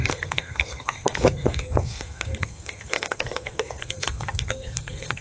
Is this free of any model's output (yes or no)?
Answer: no